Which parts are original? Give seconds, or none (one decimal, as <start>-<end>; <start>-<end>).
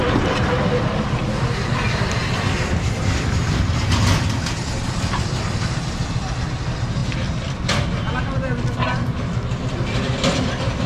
1.0-10.9